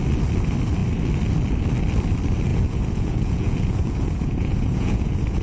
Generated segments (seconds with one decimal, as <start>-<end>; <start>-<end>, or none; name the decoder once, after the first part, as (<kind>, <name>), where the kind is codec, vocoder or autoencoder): 2.5-5.4 (vocoder, Vocos)

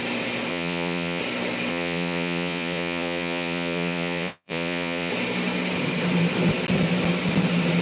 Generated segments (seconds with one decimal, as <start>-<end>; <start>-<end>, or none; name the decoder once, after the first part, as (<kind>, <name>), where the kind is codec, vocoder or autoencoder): 0.5-1.2 (vocoder, Vocos); 1.7-5.1

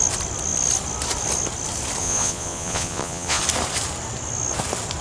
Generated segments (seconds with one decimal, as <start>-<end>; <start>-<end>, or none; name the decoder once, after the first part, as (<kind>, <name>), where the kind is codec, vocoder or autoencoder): 2.0-3.4 (vocoder, Vocos)